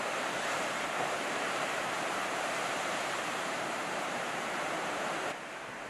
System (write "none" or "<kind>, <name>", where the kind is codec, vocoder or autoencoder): vocoder, BigVGAN v2